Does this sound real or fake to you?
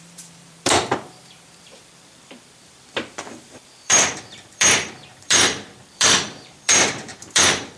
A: fake